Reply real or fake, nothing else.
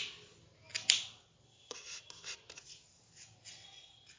real